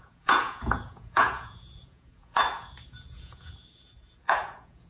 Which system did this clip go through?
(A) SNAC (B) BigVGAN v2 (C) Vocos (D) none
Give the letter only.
C